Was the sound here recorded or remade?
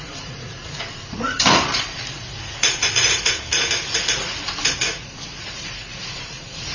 remade